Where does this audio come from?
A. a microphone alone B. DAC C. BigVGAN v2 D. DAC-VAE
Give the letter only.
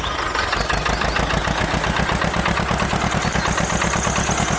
A